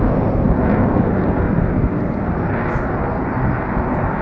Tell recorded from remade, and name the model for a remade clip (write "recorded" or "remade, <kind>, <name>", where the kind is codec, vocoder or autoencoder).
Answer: recorded